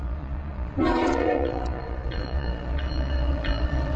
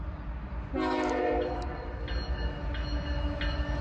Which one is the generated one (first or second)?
first